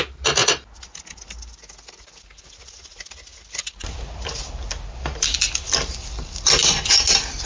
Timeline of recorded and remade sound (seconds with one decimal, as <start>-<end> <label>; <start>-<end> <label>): 0.0-7.5 recorded